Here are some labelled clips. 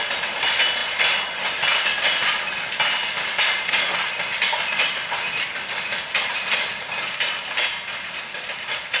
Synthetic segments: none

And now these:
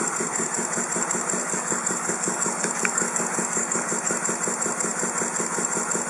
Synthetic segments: 1.4-3.9 (codec, DAC)

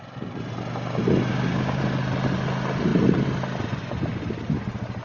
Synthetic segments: 1.3-1.8 (codec, DAC)

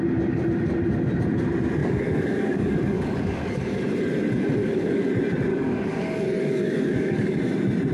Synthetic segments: 1.8-3.6 (codec, DAC); 4.6-5.1; 5.5-7.4

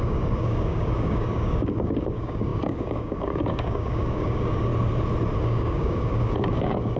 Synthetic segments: 0.0-4.7 (codec, DAC); 5.4-7.0

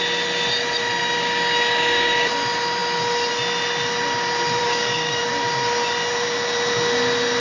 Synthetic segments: 1.0-2.3 (codec, DAC); 4.6-5.2

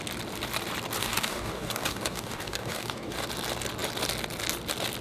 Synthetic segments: 1.0-3.1 (codec, DAC)